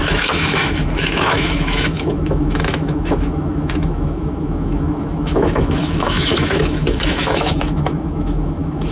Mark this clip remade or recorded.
remade